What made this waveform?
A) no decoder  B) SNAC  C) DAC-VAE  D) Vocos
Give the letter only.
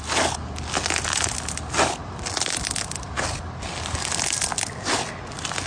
A